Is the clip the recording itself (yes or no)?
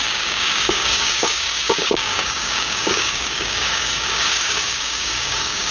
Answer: no